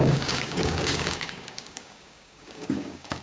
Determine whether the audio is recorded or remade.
remade